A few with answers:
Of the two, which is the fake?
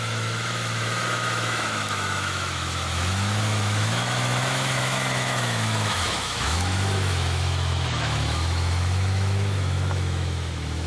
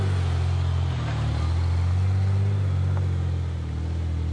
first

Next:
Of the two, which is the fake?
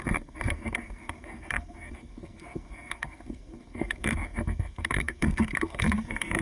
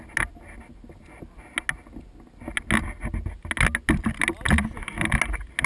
first